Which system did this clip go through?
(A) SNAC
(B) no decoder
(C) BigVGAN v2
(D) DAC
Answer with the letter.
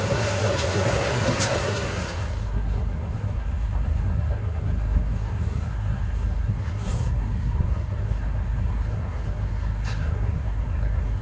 A